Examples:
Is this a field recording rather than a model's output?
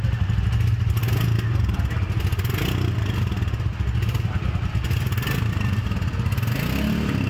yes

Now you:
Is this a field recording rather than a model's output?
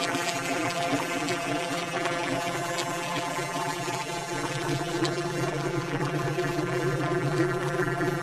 no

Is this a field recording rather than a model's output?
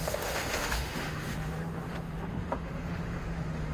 no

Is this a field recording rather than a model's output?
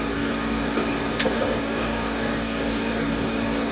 no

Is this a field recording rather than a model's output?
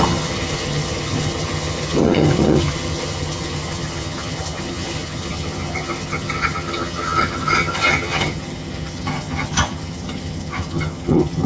no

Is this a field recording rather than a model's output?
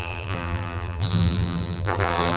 no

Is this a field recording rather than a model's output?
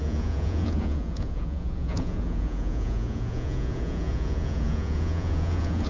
no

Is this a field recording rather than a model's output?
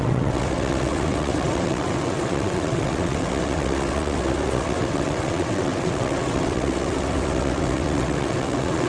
no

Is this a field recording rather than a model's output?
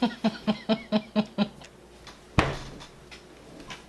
yes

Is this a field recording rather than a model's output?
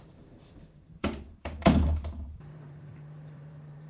no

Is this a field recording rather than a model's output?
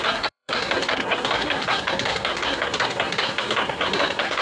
no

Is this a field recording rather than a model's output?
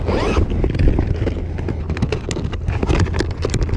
yes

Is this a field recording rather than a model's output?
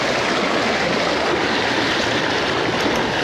yes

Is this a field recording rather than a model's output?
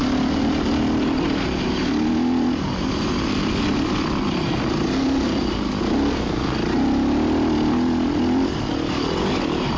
yes